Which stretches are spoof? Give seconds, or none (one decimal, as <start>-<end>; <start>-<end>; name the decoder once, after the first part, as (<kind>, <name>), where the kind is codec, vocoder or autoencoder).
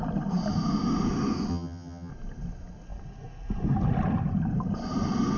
1.5-2.1 (vocoder, HiFi-GAN)